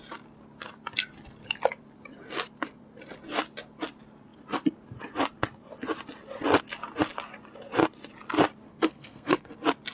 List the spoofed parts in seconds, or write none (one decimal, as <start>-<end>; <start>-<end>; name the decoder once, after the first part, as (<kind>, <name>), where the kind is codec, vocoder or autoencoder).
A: 8.7-9.5 (codec, SNAC)